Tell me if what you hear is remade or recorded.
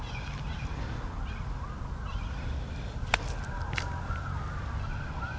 recorded